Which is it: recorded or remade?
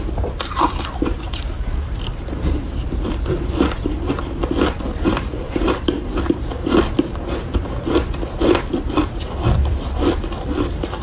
remade